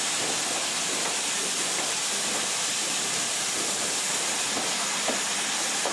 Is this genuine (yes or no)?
yes